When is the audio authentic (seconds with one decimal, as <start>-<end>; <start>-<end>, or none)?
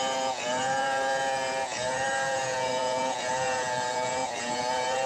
none